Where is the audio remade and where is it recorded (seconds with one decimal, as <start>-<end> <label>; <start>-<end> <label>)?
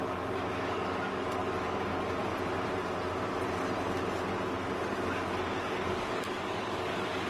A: 0.0-2.3 remade; 2.3-4.8 recorded; 4.8-7.3 remade